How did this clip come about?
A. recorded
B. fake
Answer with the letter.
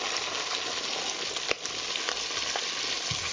A